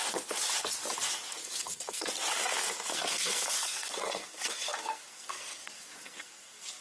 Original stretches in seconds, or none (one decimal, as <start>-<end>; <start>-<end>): 0.0-1.4; 2.1-2.9